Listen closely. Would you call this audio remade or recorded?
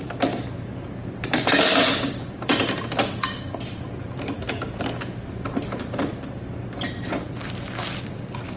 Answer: remade